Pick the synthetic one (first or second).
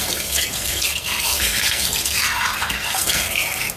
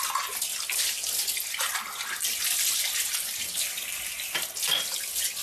first